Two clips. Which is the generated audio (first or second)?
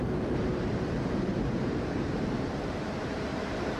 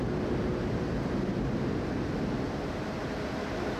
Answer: first